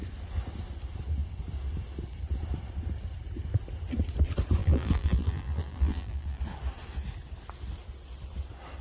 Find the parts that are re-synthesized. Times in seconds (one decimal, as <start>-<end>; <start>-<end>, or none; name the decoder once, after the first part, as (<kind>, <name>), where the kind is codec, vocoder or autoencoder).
4.6-6.4 (vocoder, BigVGAN v2)